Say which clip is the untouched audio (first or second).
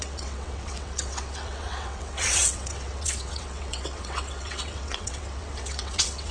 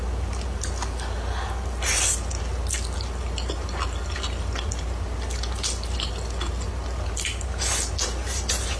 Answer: second